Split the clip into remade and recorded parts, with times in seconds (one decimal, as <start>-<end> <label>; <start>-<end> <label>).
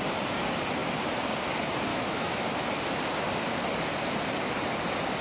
0.0-1.9 recorded; 1.9-2.7 remade; 2.7-5.2 recorded